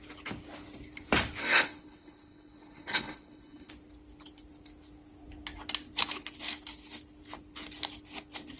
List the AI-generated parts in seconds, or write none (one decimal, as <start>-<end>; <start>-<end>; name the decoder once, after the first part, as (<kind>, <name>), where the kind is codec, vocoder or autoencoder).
1.4-3.7 (codec, HILCodec)